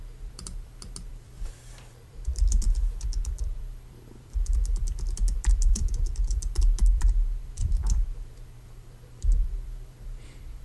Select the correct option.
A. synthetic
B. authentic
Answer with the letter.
A